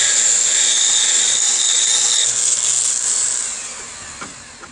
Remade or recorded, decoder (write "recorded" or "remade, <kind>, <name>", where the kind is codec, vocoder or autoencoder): remade, vocoder, BigVGAN v2